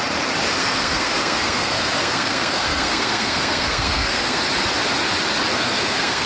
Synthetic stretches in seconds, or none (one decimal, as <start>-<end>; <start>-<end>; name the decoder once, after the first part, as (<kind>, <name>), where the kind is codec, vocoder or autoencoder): 0.6-4.4 (codec, SNAC); 5.5-6.3